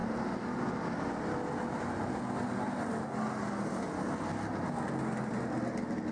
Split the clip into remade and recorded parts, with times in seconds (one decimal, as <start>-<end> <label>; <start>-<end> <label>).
0.0-6.1 recorded